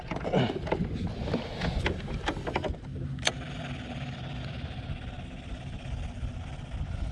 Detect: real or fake real